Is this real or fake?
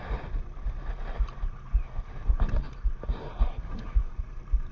real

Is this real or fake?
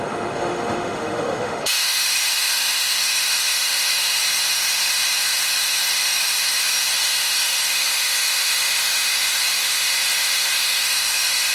fake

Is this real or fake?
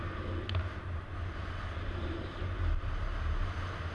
real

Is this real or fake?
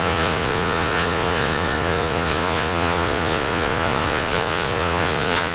fake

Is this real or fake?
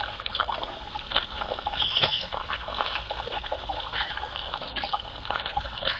fake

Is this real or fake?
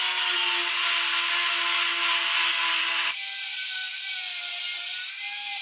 real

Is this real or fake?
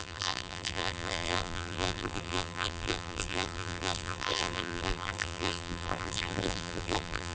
fake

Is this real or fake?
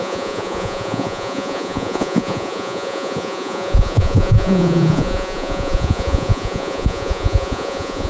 fake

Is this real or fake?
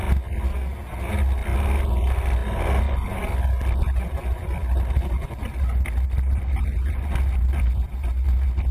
real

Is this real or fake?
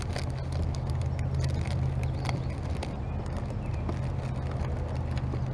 real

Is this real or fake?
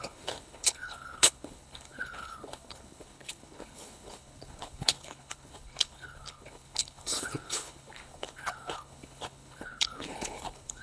fake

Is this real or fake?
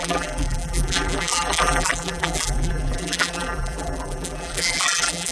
fake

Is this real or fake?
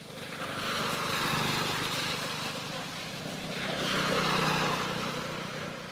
real